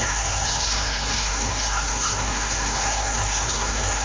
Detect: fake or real fake